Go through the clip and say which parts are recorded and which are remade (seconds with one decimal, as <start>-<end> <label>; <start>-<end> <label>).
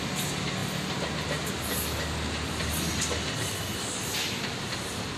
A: 0.0-5.2 recorded